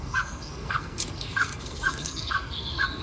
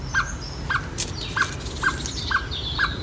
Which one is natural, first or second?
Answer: second